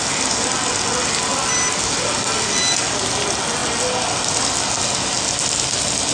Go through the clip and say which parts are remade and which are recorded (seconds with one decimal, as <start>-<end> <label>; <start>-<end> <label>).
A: 0.0-6.1 recorded